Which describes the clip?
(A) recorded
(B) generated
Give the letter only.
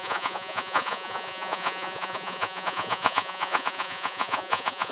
B